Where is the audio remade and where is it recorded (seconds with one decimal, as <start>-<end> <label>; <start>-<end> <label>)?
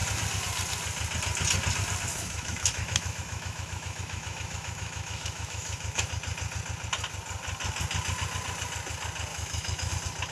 0.0-2.1 recorded; 2.1-6.1 remade; 6.1-9.3 recorded; 9.3-9.9 remade; 9.9-10.3 recorded